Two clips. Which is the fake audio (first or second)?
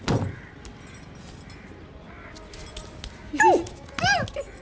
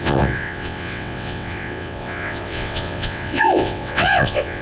second